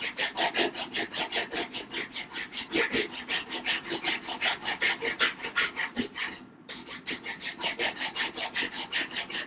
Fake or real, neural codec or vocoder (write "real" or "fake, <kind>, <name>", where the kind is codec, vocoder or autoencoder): real